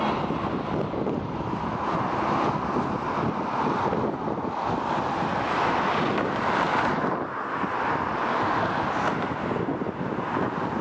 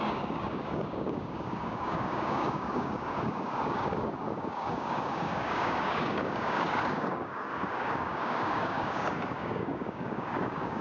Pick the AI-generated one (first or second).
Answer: second